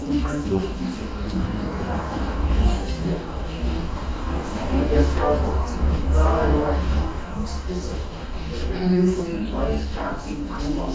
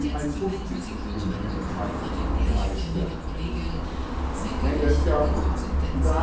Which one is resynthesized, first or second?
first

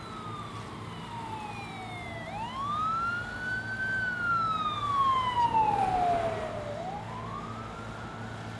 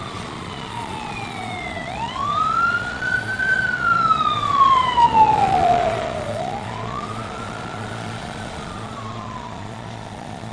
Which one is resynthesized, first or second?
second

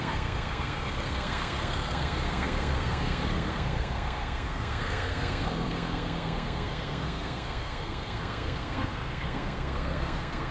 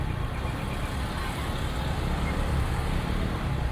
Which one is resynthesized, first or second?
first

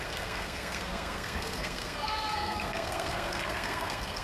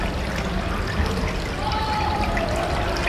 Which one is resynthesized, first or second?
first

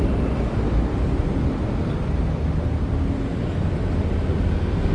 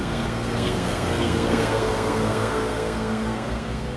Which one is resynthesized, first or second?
second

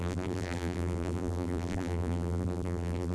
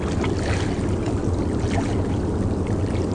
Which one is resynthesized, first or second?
first